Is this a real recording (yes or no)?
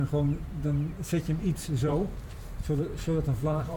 no